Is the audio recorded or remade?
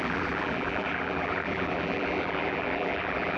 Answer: remade